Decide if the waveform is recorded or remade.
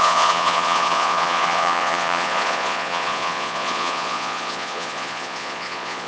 remade